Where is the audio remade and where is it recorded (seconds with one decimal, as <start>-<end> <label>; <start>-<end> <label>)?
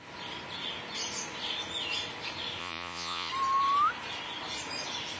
0.0-2.6 recorded; 2.6-3.3 remade; 3.3-5.2 recorded